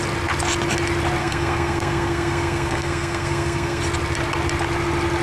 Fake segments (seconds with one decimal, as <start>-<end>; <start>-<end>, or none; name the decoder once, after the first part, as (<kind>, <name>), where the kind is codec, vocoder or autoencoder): 1.2-3.8 (codec, SNAC)